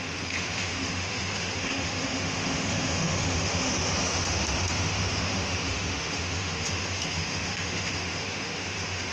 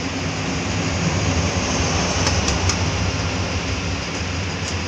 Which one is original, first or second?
second